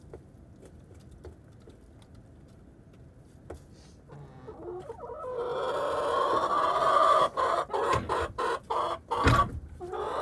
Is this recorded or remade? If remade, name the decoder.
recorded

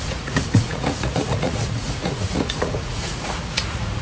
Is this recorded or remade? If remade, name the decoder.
remade, vocoder, Vocos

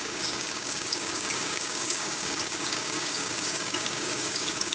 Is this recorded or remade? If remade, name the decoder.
remade, codec, DAC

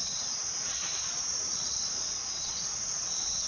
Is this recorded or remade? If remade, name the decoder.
remade, vocoder, Vocos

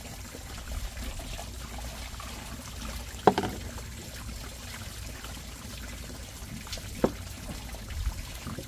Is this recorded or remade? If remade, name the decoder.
recorded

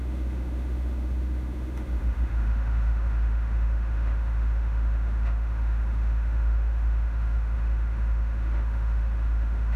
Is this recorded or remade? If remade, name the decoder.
remade, autoencoder, DAC-VAE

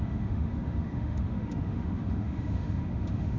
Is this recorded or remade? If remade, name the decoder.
remade, autoencoder, DAC-VAE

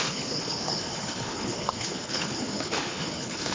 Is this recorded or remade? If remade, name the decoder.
remade, codec, HILCodec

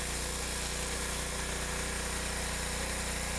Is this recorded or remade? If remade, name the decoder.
recorded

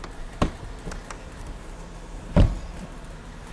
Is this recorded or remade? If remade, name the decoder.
remade, vocoder, BigVGAN v2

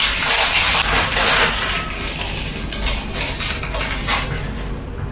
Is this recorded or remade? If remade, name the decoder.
recorded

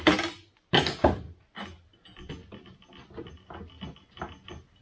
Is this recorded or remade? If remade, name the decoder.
recorded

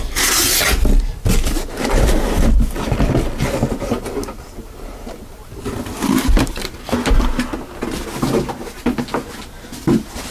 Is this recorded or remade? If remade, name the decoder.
recorded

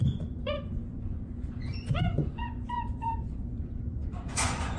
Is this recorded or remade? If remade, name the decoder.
remade, vocoder, Vocos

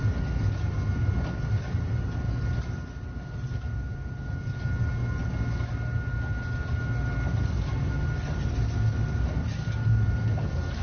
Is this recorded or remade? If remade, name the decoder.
recorded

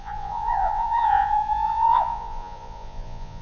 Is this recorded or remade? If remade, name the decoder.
remade, vocoder, Vocos